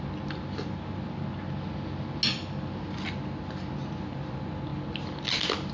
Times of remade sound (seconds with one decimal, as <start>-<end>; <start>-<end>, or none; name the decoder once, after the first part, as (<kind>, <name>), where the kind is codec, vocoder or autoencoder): none